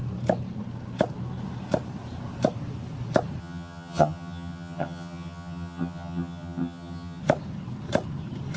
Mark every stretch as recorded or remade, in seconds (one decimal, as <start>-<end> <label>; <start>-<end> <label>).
0.0-3.4 recorded; 3.4-7.2 remade; 7.2-8.6 recorded